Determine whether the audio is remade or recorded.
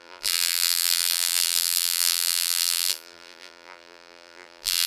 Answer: remade